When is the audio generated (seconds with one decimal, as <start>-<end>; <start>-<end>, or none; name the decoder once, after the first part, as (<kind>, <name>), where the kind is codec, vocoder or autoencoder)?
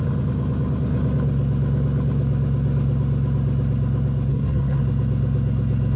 4.3-4.8 (codec, SNAC)